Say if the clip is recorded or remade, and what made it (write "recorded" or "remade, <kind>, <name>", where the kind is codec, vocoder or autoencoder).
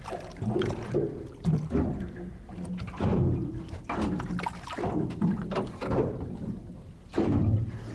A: recorded